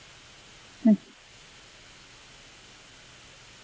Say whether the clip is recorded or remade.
recorded